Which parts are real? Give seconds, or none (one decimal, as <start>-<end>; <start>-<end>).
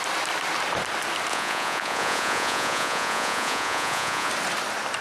0.0-1.3; 4.3-5.0